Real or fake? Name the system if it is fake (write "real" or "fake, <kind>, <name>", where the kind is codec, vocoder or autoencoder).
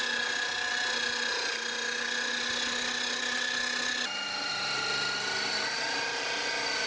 real